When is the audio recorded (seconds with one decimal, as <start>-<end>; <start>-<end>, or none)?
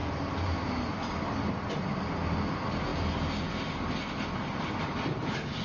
0.0-5.6